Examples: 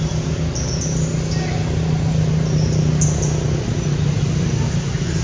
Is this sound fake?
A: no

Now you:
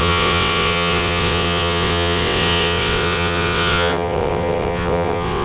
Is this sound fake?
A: yes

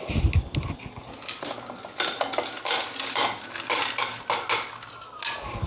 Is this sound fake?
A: no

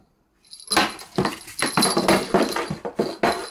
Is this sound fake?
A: no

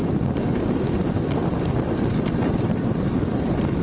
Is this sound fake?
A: no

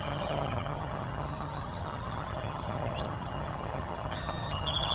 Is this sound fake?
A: yes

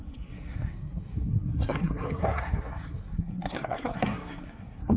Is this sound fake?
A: yes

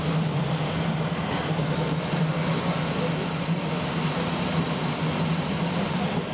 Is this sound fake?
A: no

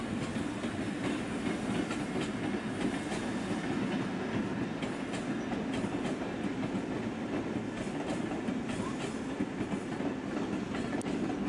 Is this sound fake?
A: no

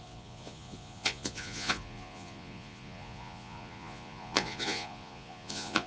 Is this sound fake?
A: yes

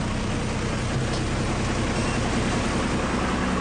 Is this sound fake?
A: no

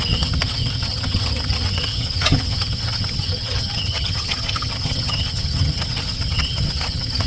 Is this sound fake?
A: yes